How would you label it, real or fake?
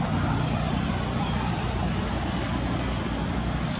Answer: real